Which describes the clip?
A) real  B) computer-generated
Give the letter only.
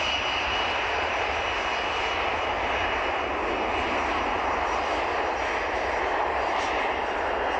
A